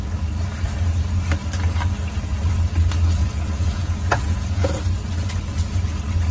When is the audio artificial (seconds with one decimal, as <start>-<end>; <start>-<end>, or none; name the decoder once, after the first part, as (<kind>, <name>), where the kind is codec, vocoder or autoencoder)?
3.2-4.7 (vocoder, Vocos)